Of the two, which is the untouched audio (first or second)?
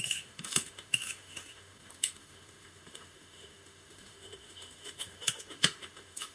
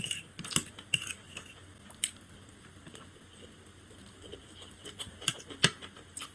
second